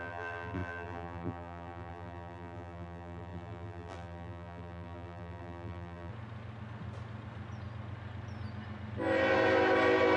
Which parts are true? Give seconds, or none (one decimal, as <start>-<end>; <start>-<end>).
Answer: 6.1-10.2